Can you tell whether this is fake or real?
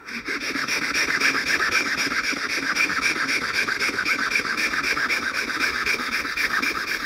fake